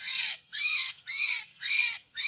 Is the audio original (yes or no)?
no